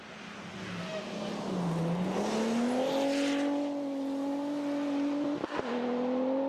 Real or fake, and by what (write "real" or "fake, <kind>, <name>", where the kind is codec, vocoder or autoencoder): real